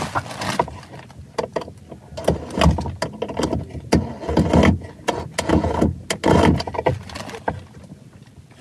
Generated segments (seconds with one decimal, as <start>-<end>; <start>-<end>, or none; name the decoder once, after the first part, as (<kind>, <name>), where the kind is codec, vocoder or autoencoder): none